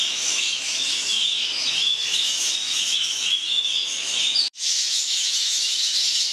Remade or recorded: remade